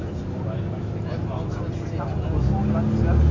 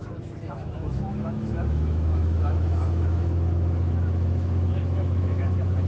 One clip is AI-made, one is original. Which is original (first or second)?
first